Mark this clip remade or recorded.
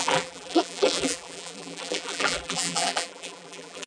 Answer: remade